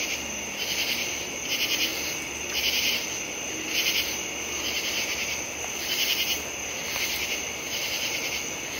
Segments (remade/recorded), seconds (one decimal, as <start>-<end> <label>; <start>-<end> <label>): 0.0-8.8 recorded